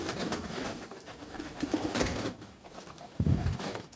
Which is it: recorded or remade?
remade